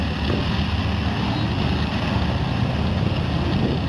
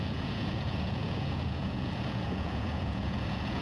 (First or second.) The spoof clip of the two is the second